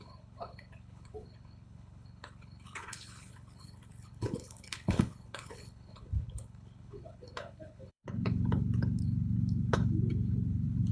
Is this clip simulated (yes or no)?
yes